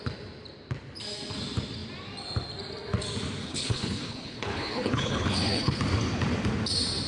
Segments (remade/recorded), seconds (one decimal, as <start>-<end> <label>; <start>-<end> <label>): 0.0-3.4 recorded; 3.4-5.8 remade; 5.8-7.1 recorded